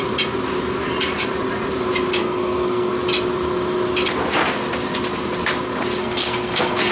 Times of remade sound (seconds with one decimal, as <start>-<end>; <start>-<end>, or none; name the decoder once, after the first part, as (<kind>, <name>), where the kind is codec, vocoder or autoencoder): 2.2-2.9 (codec, SNAC); 6.0-6.9